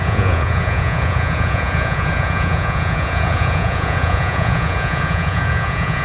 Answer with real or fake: fake